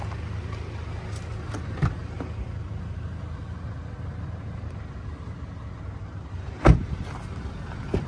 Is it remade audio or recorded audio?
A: recorded